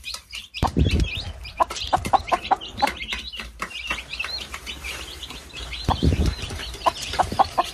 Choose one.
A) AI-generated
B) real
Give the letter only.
A